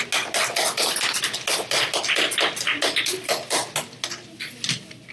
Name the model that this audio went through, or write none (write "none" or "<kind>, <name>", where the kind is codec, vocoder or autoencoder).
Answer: none